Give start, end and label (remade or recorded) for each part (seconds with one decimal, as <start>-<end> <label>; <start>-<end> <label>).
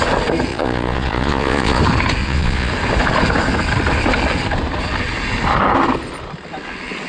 0.0-0.5 recorded; 0.5-1.8 remade; 1.8-2.2 recorded; 2.2-2.7 remade; 2.7-7.1 recorded